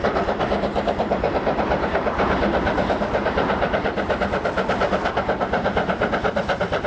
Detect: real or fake real